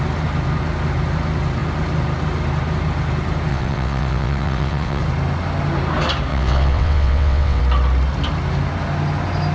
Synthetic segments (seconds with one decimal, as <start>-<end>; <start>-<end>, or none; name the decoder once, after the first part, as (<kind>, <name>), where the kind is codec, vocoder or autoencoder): 3.5-5.0 (vocoder, WaveNeXt); 6.3-7.6